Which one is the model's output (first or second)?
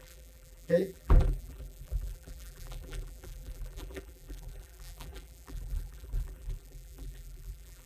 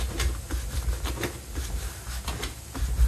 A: first